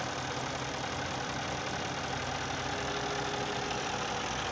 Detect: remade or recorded recorded